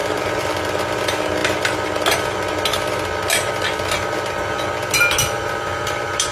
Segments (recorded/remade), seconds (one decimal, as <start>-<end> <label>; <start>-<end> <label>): 0.0-0.6 remade; 0.6-6.3 recorded